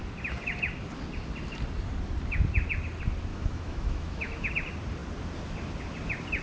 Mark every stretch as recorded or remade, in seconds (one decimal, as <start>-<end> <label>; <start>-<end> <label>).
0.0-3.3 recorded; 3.3-4.5 remade; 4.5-6.4 recorded